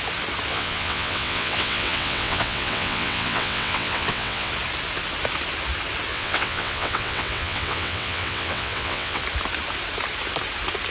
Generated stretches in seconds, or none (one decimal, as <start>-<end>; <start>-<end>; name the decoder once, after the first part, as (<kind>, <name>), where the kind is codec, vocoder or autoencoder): 0.5-4.5 (vocoder, WaveNeXt); 6.1-9.2